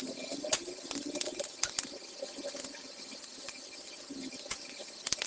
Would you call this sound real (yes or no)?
yes